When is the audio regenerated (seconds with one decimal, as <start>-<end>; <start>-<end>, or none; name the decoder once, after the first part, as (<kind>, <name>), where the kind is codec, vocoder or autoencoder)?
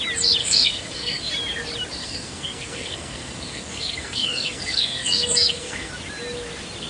0.4-1.3 (codec, SNAC); 2.0-5.9